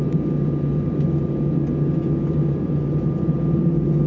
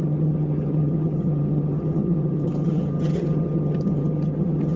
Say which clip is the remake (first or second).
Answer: second